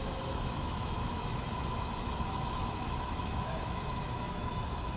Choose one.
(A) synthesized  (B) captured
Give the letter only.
A